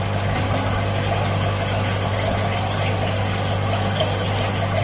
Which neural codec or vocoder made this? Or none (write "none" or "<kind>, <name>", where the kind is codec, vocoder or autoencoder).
none